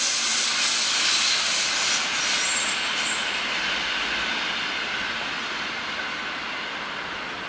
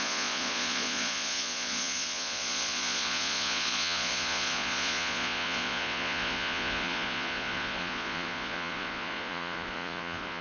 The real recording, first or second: first